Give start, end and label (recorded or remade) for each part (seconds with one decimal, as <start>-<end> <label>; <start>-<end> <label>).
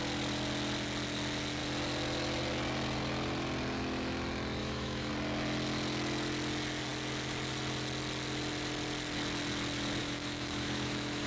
0.0-4.6 recorded; 4.6-5.1 remade; 5.1-10.0 recorded; 10.0-11.3 remade